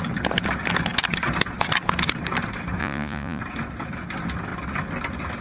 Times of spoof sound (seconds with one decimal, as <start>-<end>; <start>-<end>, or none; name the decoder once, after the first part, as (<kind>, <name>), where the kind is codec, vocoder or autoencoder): 2.8-3.4 (vocoder, Vocos)